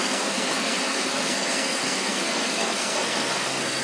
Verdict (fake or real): fake